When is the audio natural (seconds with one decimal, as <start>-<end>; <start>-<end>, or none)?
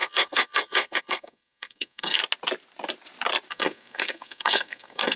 2.2-3.5